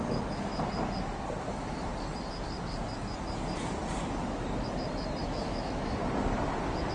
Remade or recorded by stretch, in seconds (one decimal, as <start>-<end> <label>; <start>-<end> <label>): 0.0-0.5 remade; 0.5-1.4 recorded; 1.4-1.9 remade; 1.9-5.2 recorded; 5.2-6.0 remade; 6.0-6.9 recorded